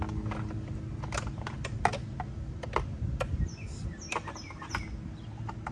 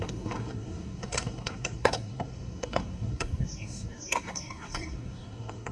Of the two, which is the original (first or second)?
first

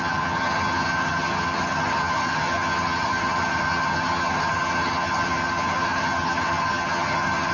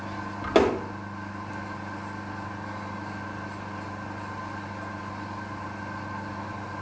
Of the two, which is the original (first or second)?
second